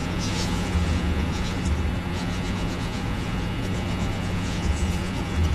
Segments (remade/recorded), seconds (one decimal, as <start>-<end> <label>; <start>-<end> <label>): 0.0-1.6 remade; 1.6-2.1 recorded; 2.1-5.5 remade